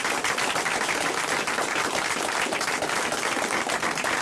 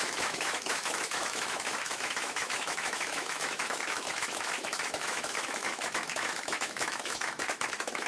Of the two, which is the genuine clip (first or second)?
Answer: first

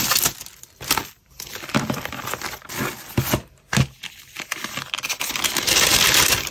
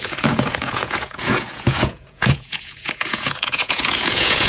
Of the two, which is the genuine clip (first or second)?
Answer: first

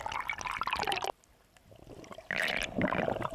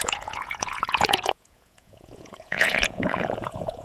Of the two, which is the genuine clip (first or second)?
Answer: first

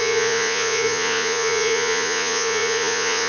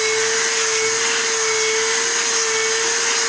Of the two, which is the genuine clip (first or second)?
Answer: second